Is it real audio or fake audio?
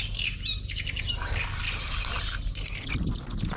real